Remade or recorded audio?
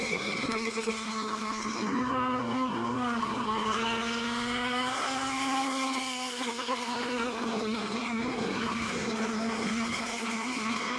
remade